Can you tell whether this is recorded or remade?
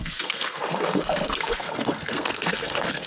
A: remade